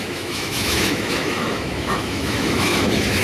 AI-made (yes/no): yes